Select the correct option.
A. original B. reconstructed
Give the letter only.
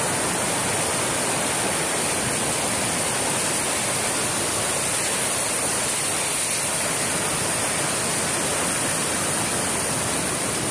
A